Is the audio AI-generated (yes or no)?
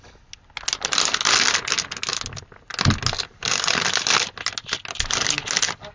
no